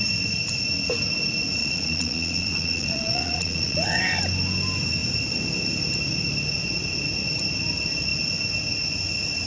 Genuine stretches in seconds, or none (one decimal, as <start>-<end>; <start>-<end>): 0.0-1.6; 4.0-9.5